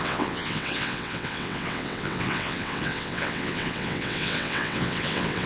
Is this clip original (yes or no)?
no